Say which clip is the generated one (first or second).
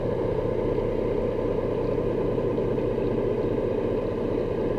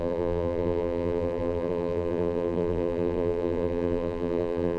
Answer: second